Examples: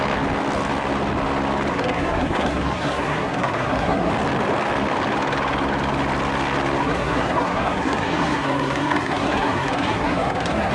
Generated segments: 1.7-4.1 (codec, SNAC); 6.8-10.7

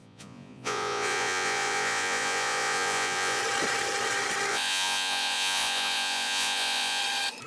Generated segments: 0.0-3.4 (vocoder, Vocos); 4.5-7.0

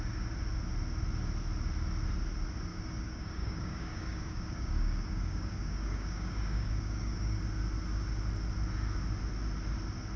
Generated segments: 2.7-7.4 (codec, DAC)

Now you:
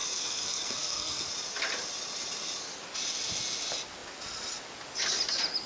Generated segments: 0.0-1.3 (codec, SNAC)

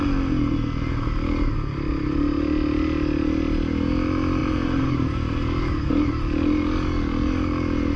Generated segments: 4.4-5.9 (vocoder, BigVGAN v2)

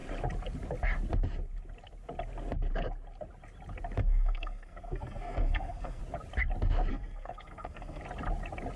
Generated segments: 4.0-6.0 (codec, SNAC); 6.9-8.0

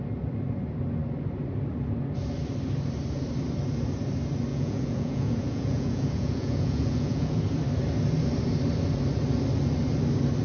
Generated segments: 4.5-7.4 (vocoder, Vocos)

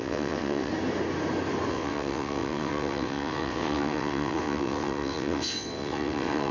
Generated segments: 0.0-0.7 (vocoder, WaveNeXt); 1.7-6.5